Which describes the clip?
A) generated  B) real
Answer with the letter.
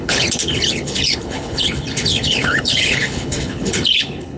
A